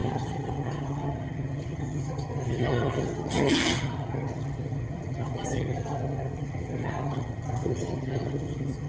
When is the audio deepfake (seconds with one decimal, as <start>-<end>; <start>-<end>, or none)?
0.0-8.9